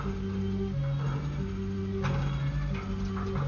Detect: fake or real real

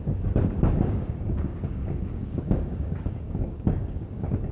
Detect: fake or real fake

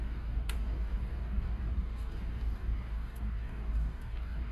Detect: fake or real fake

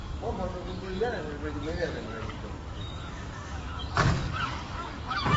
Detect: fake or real fake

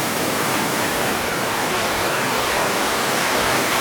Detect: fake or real fake